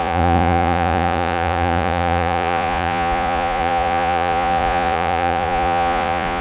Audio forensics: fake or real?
fake